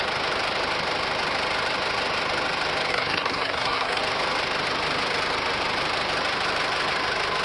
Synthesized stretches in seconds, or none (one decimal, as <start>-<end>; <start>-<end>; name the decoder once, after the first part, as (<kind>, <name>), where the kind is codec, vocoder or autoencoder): 2.9-4.0 (codec, SNAC)